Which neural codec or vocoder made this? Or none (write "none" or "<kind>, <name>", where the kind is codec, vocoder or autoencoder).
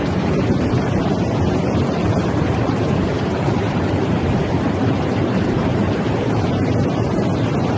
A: vocoder, BigVGAN v2